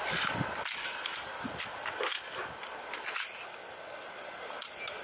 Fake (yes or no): no